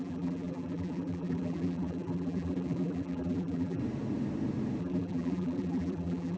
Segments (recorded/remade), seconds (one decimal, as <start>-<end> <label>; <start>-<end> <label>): 0.0-3.8 remade; 3.8-4.8 recorded; 4.8-6.4 remade